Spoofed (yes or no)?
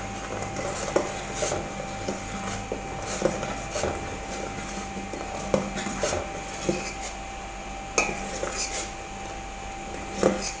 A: no